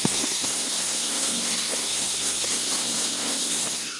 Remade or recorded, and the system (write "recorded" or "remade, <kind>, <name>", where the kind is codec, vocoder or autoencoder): remade, codec, SNAC